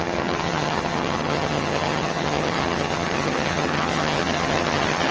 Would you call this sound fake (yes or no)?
yes